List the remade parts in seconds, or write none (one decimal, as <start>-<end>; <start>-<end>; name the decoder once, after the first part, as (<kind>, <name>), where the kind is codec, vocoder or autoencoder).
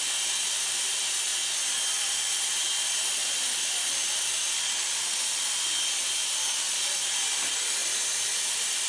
0.0-1.3 (vocoder, BigVGAN v2); 2.4-8.9